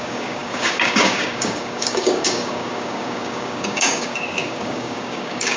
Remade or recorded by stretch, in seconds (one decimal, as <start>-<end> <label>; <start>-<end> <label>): 0.0-5.6 remade